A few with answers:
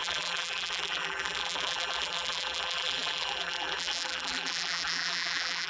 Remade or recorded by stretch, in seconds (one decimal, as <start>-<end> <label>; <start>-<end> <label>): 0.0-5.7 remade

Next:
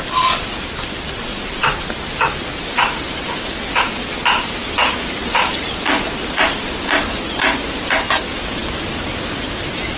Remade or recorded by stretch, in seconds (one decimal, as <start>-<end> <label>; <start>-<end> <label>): 0.0-2.7 recorded; 2.7-3.6 remade; 3.6-10.0 recorded

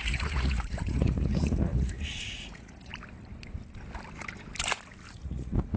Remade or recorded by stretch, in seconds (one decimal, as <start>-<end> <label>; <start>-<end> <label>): 0.0-2.9 remade; 2.9-5.1 recorded; 5.1-5.8 remade

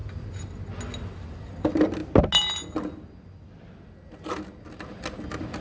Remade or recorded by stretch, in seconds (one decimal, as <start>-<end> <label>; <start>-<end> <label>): 0.0-5.6 recorded